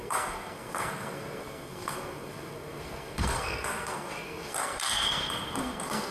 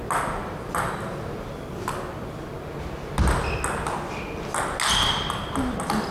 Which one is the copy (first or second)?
first